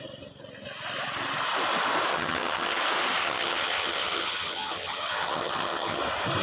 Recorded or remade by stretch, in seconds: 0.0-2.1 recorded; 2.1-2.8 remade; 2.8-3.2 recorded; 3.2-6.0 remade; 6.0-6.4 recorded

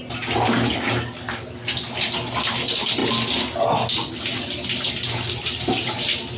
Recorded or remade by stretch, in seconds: 0.0-6.4 recorded